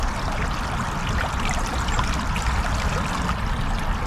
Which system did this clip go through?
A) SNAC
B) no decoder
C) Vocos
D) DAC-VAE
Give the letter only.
B